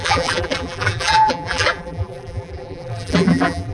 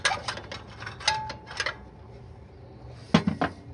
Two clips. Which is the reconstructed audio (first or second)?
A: first